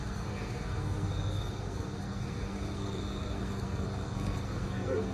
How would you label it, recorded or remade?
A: remade